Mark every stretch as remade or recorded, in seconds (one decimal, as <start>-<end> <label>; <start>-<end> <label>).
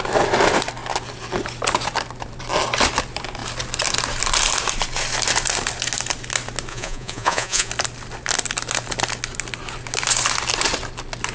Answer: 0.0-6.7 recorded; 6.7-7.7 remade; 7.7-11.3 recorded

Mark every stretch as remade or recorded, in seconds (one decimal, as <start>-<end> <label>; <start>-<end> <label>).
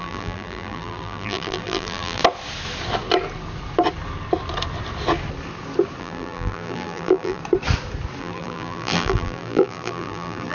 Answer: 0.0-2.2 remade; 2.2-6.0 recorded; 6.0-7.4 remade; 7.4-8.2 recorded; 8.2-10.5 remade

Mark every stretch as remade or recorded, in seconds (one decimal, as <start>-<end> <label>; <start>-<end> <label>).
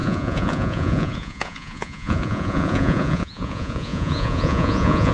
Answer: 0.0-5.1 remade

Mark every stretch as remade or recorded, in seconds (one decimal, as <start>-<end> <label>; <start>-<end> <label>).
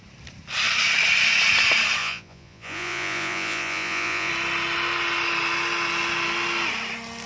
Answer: 0.0-2.0 recorded; 2.0-4.3 remade; 4.3-7.3 recorded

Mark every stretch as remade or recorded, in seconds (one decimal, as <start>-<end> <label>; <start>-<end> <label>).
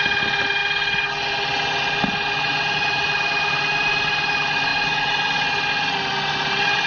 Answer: 0.0-6.9 recorded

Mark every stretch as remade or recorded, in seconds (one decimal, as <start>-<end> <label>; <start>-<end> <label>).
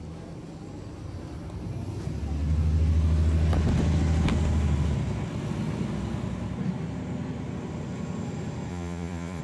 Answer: 0.0-8.7 recorded; 8.7-9.4 remade